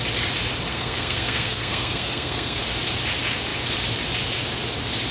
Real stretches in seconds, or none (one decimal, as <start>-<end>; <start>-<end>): 0.0-0.7; 2.6-5.1